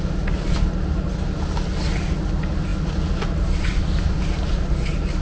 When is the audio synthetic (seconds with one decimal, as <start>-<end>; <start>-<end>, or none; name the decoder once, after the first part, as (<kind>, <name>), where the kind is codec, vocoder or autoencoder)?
none

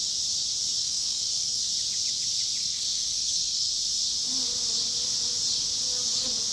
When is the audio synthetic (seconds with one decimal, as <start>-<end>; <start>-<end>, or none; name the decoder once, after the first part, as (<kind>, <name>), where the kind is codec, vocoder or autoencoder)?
0.8-1.7 (codec, SNAC); 2.6-3.7

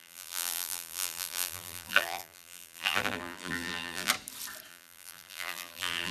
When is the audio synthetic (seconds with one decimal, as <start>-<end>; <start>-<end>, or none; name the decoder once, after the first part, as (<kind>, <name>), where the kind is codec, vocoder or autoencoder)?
0.0-4.1 (vocoder, BigVGAN v2); 4.7-6.1

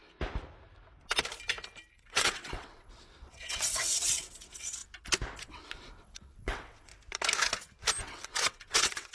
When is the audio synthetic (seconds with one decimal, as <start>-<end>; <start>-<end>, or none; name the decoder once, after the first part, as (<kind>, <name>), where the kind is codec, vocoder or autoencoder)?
1.9-4.8 (vocoder, WaveNeXt); 5.4-6.9; 8.0-9.1